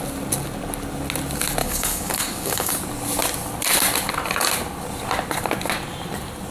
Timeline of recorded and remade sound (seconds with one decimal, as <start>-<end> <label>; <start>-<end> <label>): 0.0-1.6 recorded; 1.6-2.7 remade; 2.7-6.5 recorded